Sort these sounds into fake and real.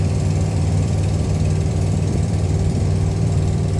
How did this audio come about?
fake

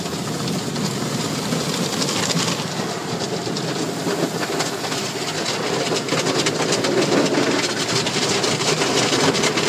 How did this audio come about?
real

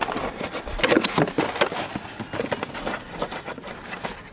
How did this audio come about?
real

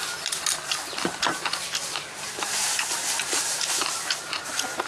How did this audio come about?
fake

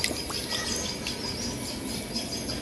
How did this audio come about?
real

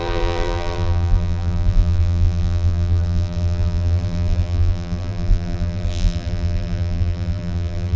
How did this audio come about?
fake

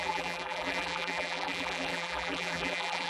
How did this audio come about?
fake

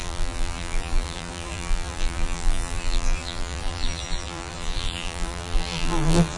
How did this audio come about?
fake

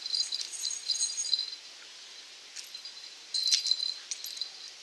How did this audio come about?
real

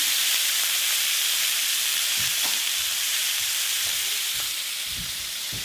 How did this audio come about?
fake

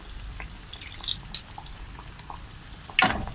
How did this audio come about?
real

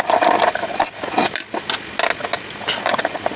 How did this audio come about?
real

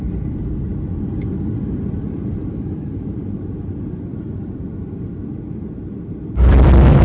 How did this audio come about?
fake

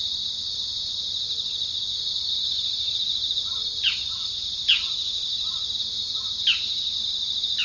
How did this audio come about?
real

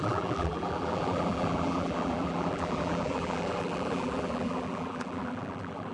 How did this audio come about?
fake